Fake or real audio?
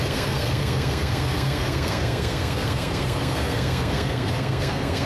fake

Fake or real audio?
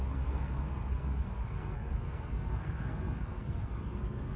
fake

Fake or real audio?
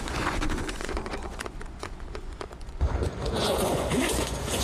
fake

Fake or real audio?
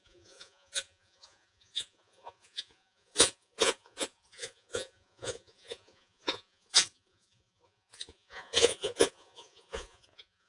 fake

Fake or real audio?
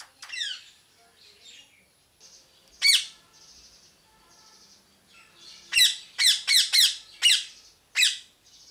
real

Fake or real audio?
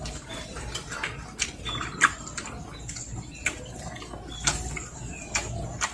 real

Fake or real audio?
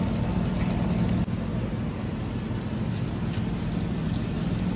real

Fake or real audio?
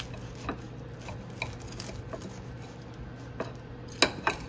real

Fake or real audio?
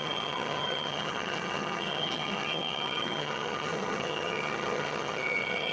fake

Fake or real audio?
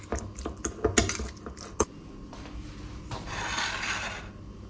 real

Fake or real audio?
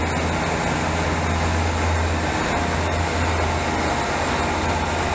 real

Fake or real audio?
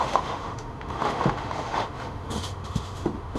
fake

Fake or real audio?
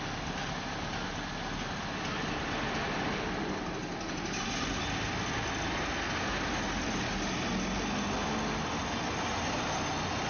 real